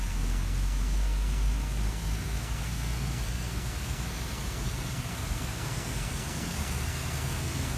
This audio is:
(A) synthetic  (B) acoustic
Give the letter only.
A